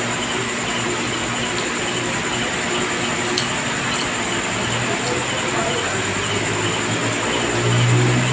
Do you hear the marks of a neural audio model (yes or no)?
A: no